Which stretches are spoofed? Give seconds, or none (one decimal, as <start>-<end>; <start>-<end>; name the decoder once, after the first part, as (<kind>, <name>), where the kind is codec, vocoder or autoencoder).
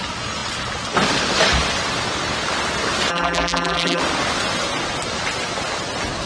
3.1-4.0 (vocoder, BigVGAN v2)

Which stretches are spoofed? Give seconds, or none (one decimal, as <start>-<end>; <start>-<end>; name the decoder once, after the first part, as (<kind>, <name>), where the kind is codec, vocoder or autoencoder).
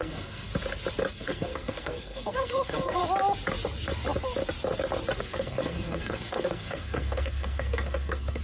0.0-0.5 (codec, SNAC); 1.1-3.0; 5.2-8.4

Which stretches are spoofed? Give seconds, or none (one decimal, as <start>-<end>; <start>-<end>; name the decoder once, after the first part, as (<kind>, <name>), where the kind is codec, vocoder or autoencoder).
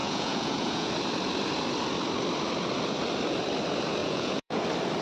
0.0-0.9 (vocoder, Vocos); 4.0-4.6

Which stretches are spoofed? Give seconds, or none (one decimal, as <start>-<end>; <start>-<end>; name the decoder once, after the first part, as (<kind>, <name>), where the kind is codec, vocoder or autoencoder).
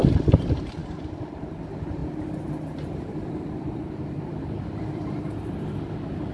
0.8-1.4 (vocoder, BigVGAN v2); 2.0-5.2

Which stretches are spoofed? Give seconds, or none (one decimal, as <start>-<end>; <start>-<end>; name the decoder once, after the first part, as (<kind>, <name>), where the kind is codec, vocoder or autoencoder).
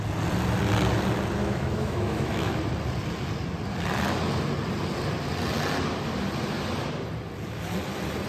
1.4-2.5 (autoencoder, DAC-VAE)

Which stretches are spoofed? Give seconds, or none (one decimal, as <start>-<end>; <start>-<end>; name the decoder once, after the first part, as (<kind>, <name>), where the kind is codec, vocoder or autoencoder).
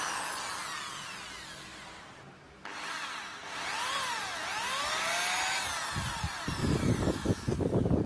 6.6-7.5 (autoencoder, DAC-VAE)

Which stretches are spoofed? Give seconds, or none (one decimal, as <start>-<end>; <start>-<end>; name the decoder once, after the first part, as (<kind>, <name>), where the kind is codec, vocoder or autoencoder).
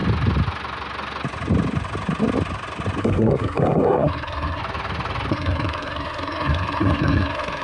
3.0-4.6 (codec, SNAC); 5.3-7.6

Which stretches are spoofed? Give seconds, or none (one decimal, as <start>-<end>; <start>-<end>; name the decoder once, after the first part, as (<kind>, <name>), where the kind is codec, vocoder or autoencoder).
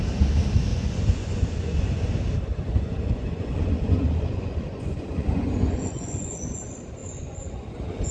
0.7-2.1 (vocoder, Vocos); 2.5-6.6; 7.0-8.1